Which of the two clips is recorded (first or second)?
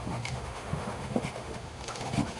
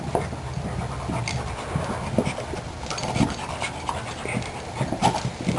second